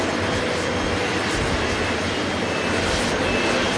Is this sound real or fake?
real